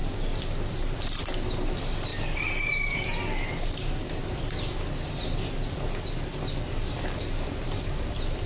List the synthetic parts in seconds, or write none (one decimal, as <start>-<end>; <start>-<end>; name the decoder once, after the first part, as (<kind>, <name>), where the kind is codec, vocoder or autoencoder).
1.2-8.5 (vocoder, BigVGAN v2)